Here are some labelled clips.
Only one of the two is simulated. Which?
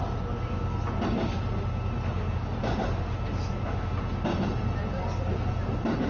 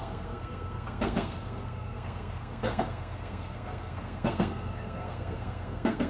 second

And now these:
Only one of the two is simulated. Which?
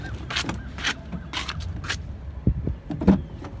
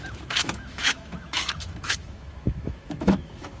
second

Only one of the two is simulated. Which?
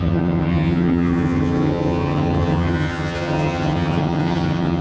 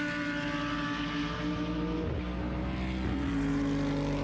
first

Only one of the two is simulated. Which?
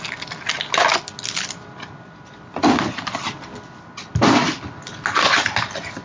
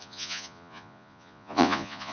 second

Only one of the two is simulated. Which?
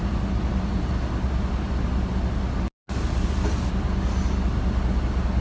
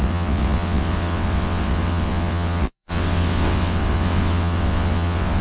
second